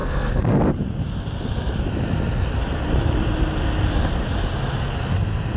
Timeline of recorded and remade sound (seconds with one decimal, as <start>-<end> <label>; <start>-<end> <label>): 0.0-0.6 remade; 0.6-5.6 recorded